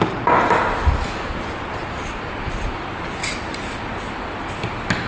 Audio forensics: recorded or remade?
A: recorded